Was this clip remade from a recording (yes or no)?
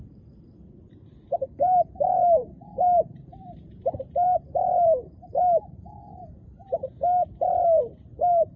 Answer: yes